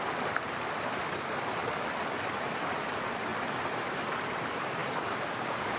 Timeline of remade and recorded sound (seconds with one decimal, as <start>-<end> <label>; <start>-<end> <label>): 0.0-4.8 recorded; 4.8-5.8 remade